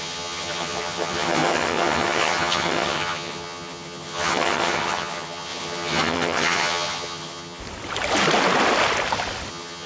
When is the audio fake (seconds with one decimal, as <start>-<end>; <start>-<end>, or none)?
0.0-7.6; 9.5-9.9